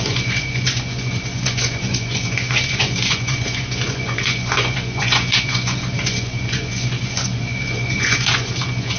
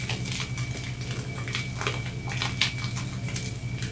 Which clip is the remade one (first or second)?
first